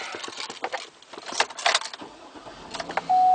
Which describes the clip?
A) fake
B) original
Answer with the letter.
B